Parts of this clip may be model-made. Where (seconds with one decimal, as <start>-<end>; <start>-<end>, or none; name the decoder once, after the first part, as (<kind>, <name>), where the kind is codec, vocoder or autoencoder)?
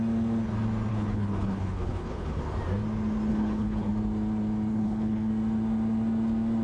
0.9-2.4 (codec, HILCodec); 3.3-3.9; 4.7-5.3